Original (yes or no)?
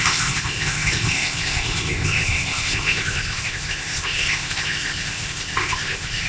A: no